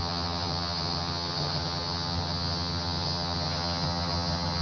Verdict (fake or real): fake